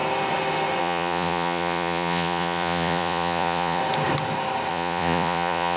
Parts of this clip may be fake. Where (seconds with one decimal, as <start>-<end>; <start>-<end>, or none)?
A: 0.8-3.8; 4.7-5.8